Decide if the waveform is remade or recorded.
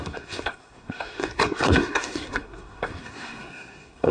remade